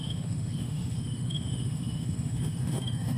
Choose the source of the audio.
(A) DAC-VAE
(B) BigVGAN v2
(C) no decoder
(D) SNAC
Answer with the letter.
A